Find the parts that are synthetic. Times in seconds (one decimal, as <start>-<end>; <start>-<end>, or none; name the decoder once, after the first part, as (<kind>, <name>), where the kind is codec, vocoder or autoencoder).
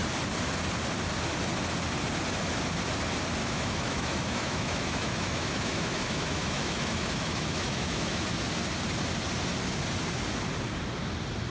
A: 3.4-8.4 (autoencoder, DAC-VAE)